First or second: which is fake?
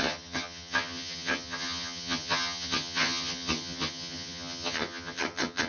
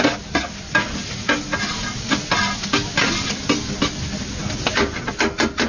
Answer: first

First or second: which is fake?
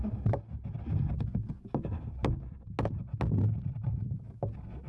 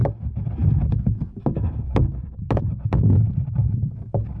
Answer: second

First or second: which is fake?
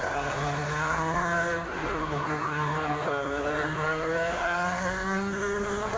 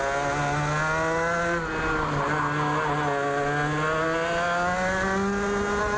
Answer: first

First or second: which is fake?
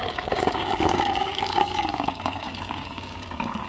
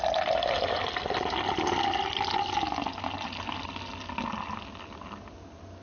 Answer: first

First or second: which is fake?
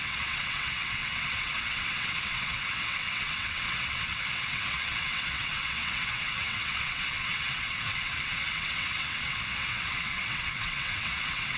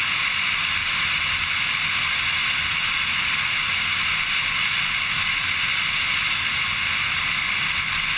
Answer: first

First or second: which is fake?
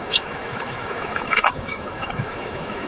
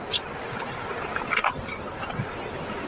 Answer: first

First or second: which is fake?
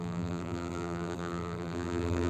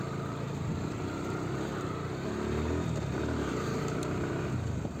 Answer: first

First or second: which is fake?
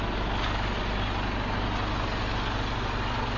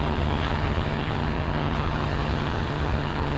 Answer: second